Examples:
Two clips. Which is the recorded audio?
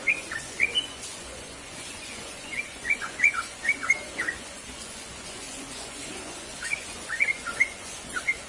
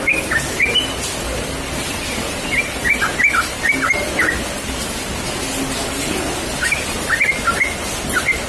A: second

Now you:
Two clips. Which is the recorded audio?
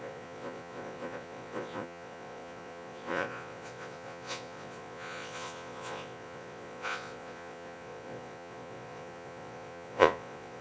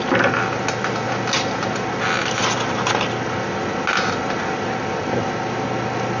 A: second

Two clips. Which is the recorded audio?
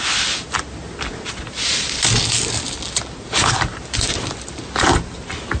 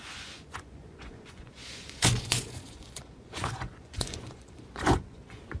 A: first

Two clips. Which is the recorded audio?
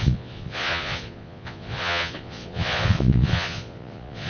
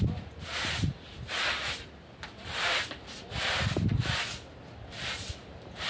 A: second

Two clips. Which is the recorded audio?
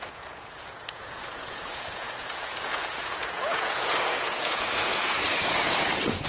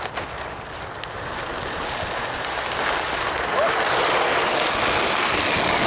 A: second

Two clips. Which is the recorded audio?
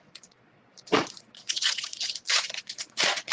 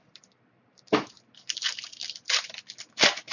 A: second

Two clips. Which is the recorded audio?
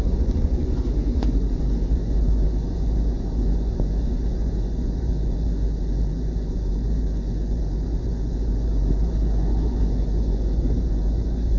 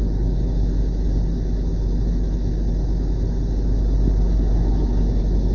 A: second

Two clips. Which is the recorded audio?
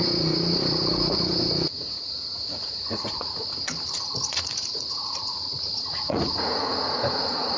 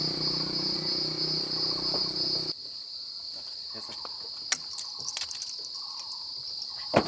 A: second